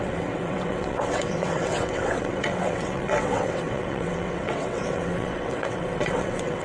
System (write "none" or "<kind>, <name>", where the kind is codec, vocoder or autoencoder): vocoder, WaveNeXt